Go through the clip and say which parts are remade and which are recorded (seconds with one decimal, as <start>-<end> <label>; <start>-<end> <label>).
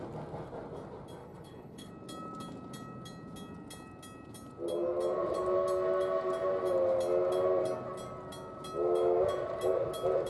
0.0-1.2 recorded; 1.2-1.9 remade; 1.9-10.3 recorded